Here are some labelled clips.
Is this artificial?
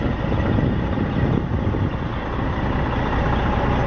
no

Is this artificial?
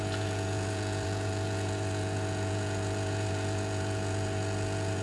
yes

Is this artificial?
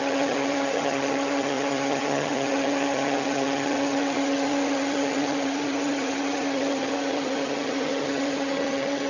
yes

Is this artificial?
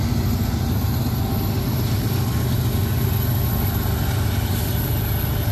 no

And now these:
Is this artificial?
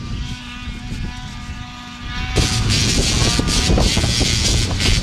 no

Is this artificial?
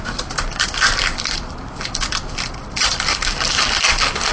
yes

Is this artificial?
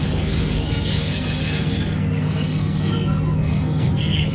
yes